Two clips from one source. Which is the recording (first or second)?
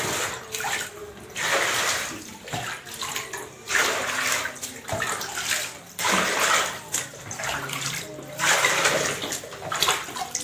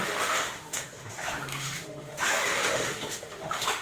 first